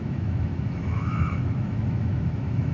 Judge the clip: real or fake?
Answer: fake